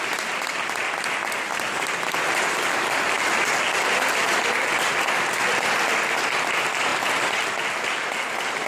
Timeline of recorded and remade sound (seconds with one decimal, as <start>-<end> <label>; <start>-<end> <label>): 0.0-8.7 recorded